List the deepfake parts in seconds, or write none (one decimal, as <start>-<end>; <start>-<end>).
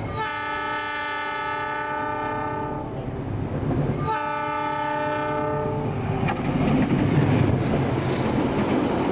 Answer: none